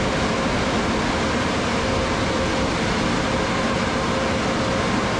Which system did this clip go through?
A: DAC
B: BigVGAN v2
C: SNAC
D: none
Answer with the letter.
D